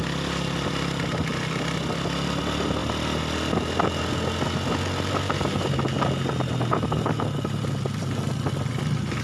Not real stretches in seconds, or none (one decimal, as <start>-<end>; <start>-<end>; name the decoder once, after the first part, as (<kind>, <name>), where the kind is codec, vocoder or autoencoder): none